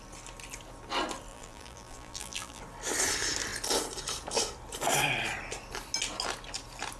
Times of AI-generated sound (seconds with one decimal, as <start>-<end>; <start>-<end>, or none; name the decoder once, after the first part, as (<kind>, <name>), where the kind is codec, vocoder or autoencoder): 1.3-2.6 (vocoder, BigVGAN v2)